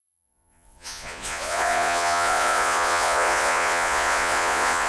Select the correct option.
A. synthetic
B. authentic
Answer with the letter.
A